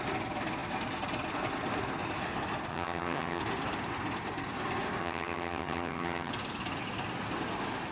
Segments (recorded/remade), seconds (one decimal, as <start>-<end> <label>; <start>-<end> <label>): 0.0-2.7 recorded; 2.7-3.4 remade; 3.4-5.0 recorded; 5.0-6.3 remade; 6.3-7.9 recorded